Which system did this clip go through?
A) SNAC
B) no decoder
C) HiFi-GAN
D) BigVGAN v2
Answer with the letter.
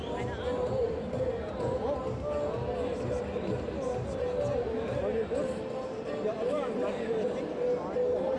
B